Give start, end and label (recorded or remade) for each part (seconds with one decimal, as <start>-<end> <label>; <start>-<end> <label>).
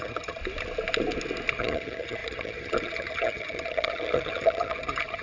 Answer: 0.0-0.4 remade; 0.4-1.5 recorded; 1.5-5.2 remade